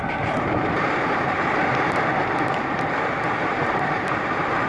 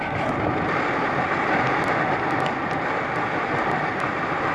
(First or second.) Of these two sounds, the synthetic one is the first